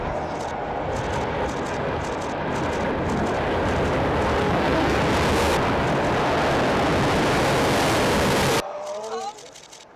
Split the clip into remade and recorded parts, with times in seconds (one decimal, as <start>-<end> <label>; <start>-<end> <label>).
0.0-4.4 recorded; 4.4-5.0 remade; 5.0-10.0 recorded